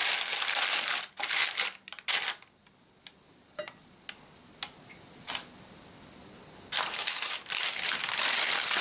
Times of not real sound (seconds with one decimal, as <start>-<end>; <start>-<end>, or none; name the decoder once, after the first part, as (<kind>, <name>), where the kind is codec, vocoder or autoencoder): none